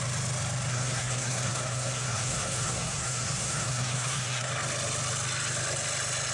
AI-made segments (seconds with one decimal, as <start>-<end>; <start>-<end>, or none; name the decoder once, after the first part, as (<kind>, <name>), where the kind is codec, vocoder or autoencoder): 0.7-4.5 (codec, SNAC)